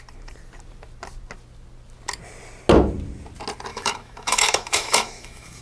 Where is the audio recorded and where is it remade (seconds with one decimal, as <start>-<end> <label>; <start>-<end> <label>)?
0.0-3.7 recorded; 3.7-5.6 remade